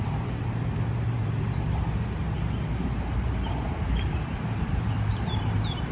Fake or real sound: fake